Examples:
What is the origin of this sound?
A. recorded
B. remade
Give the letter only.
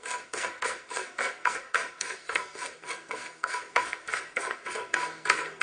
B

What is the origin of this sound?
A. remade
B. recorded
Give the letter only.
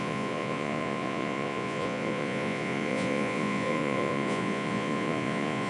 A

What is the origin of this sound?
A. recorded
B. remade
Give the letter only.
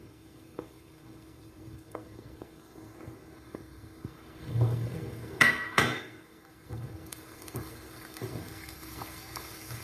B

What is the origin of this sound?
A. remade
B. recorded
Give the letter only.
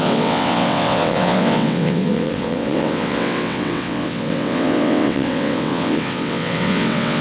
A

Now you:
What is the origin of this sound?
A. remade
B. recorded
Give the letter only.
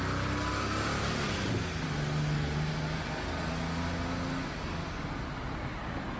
B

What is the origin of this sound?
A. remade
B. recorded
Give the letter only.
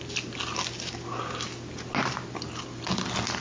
B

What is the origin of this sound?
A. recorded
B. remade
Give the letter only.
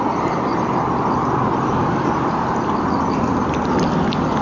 A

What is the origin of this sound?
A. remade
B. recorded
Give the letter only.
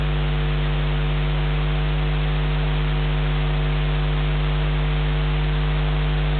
B